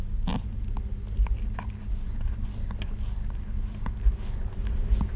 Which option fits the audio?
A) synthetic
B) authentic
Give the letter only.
B